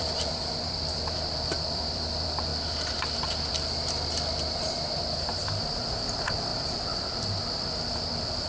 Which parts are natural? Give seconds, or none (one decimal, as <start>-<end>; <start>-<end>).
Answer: 2.5-5.8